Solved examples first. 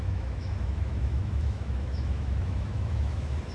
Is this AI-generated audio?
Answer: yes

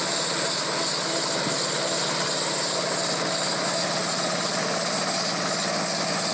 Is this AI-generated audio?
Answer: no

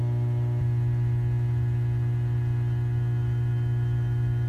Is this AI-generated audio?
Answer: no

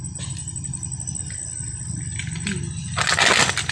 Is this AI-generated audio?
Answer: no